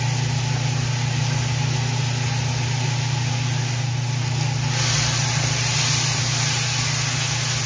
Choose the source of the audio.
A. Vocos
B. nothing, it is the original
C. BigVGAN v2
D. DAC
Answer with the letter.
B